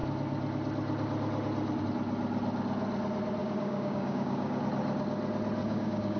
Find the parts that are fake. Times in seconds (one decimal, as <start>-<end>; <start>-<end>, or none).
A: 3.4-4.6; 5.6-6.2